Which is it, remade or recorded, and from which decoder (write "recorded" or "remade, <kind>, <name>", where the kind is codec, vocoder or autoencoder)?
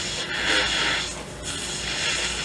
recorded